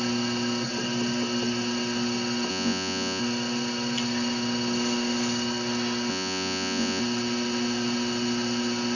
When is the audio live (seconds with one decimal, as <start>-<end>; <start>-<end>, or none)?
0.0-2.5; 3.2-6.1; 7.0-8.9